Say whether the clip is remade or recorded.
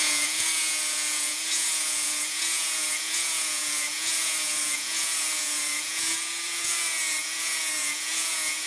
remade